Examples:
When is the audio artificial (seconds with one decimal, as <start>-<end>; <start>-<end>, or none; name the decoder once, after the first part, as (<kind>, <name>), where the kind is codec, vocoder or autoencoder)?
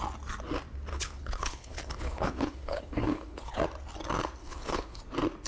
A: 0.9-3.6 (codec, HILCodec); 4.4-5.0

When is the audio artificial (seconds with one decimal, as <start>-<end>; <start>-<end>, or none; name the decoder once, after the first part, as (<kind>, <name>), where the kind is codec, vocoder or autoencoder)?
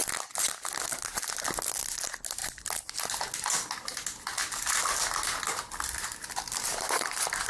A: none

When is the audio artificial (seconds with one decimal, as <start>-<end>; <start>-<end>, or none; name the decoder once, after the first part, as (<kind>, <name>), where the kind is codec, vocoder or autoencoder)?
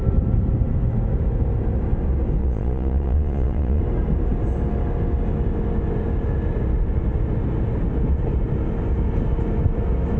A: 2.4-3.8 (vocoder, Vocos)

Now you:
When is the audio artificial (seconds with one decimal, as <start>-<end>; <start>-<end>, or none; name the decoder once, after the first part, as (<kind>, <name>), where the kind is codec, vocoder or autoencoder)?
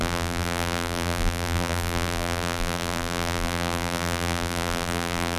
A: 0.0-5.4 (vocoder, BigVGAN v2)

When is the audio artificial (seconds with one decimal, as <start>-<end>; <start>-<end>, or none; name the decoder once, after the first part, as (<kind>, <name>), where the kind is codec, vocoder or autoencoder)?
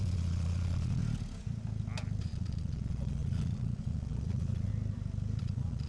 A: 0.0-1.0 (vocoder, Vocos); 2.2-4.7; 5.4-5.9